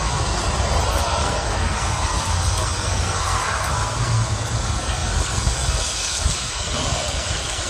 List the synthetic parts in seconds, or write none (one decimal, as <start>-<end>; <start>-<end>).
0.0-0.4; 0.9-7.7